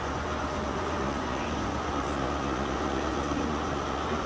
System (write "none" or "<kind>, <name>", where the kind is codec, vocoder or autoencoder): vocoder, Vocos